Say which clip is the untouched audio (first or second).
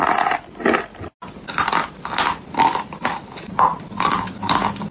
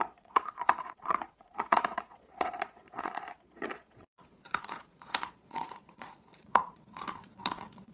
first